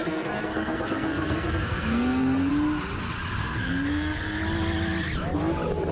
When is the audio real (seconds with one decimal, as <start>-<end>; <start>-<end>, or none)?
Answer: 2.5-3.4; 4.4-5.9